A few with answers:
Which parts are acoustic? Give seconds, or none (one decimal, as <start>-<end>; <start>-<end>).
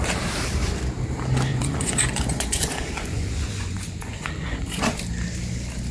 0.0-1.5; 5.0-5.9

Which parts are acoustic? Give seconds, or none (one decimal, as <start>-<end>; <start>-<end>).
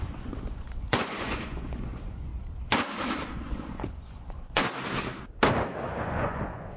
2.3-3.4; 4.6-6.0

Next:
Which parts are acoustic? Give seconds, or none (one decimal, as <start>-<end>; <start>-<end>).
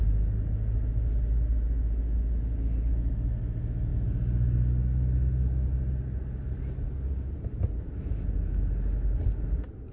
0.0-9.9